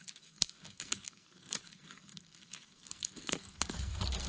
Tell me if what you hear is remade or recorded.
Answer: remade